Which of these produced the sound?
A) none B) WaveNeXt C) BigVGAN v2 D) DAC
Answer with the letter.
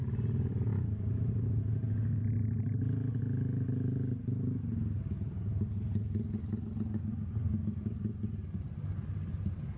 A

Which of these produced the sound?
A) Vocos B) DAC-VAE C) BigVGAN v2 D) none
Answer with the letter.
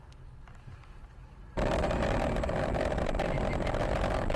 D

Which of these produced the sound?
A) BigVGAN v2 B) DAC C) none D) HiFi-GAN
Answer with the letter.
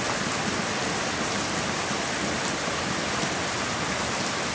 A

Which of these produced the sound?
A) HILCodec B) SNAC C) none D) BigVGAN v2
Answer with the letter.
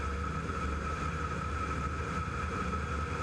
D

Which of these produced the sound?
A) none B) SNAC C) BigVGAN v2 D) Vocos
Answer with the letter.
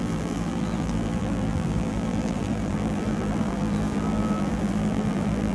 C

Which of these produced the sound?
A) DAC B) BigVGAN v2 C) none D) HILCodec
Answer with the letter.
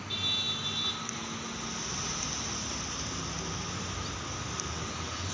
C